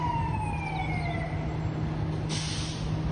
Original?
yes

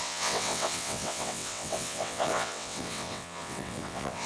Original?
no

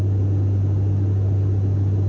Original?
yes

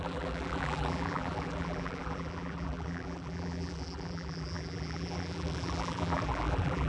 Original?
no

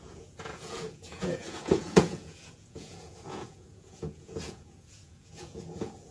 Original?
no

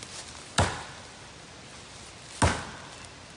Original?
yes